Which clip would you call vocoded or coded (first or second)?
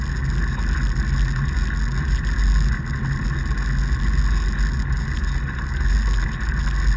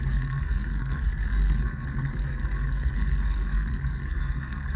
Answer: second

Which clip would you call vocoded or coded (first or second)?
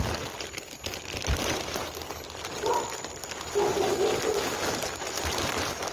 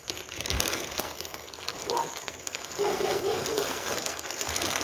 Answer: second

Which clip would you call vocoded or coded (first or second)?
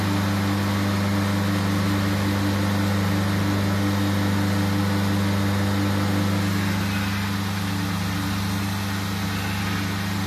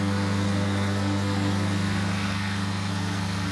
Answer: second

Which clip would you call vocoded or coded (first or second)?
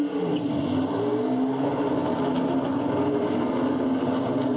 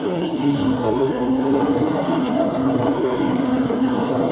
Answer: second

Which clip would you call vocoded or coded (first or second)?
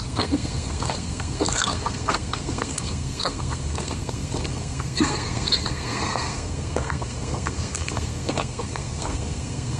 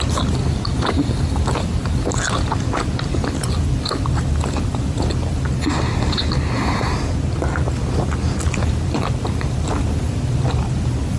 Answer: first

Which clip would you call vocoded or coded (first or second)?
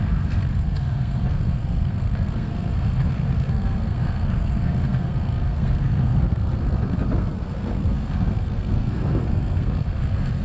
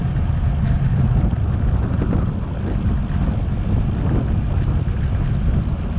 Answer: first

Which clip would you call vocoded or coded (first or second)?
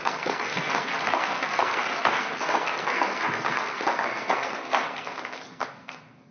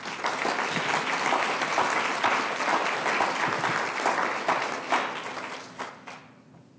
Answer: first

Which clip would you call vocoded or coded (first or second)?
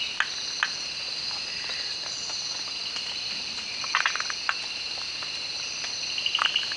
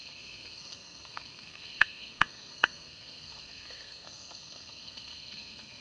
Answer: second